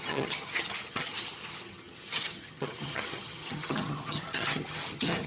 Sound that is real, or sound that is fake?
fake